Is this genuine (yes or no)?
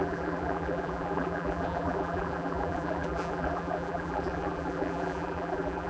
no